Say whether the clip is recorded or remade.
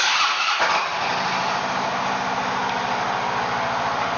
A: recorded